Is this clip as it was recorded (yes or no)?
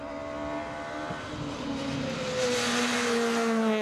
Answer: yes